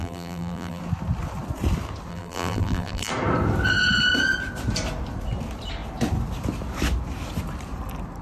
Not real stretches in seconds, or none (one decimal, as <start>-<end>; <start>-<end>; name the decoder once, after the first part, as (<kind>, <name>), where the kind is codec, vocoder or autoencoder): 0.0-0.8 (vocoder, BigVGAN v2); 2.1-3.1